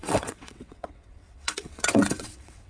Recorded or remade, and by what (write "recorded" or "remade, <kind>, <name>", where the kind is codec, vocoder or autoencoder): remade, vocoder, WaveNeXt